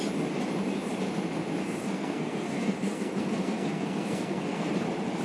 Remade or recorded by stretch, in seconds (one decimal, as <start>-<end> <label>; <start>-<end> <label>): 0.0-1.6 recorded; 1.6-4.7 remade; 4.7-5.2 recorded

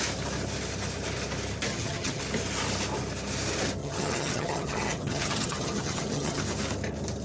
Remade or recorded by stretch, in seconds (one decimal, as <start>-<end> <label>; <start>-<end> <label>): 0.0-1.7 recorded; 1.7-2.2 remade; 2.2-3.8 recorded; 3.8-6.4 remade; 6.4-7.2 recorded